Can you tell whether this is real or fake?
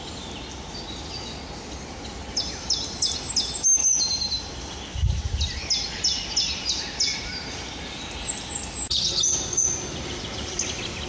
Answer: real